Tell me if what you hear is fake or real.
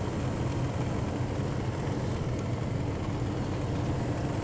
real